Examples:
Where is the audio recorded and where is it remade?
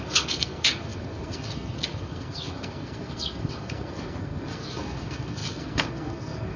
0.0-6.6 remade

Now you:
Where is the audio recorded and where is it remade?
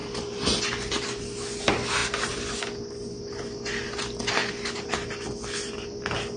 0.0-6.4 recorded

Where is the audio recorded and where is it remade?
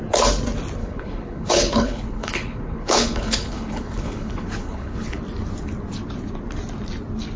0.0-0.8 recorded; 0.8-5.2 remade; 5.2-7.4 recorded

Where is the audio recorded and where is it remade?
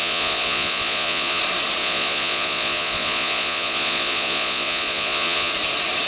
0.0-1.4 remade; 1.4-1.8 recorded; 1.8-5.5 remade; 5.5-6.1 recorded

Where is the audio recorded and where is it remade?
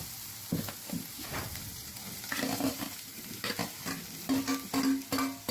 0.0-1.1 recorded; 1.1-3.5 remade; 3.5-5.5 recorded